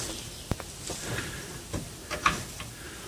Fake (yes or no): no